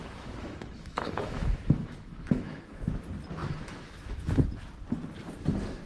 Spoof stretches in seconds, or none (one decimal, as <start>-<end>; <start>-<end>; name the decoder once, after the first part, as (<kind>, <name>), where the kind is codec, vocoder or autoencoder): 0.0-2.9 (autoencoder, DAC-VAE); 3.4-4.4